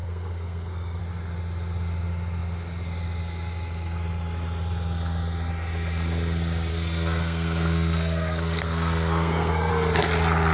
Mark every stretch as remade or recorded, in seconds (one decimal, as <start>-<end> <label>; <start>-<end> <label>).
0.0-1.0 remade; 1.0-6.7 recorded; 6.7-9.7 remade; 9.7-10.5 recorded